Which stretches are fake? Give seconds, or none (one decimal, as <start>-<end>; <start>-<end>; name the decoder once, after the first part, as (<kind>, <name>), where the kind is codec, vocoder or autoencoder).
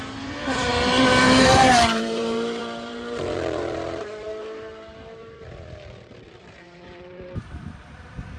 0.0-8.4 (vocoder, BigVGAN v2)